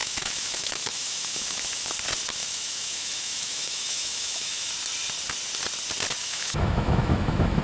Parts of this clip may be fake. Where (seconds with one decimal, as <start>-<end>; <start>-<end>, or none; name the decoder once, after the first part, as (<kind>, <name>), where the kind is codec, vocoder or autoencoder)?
0.0-1.9 (autoencoder, DAC-VAE); 2.4-4.7; 6.2-7.6